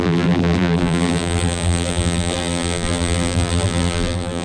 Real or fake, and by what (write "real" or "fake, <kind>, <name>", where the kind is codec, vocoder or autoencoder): fake, vocoder, BigVGAN v2